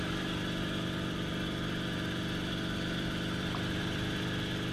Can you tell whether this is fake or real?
fake